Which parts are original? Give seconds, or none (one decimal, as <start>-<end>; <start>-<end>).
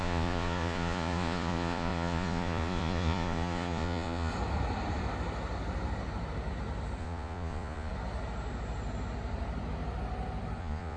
4.3-7.0; 7.9-10.6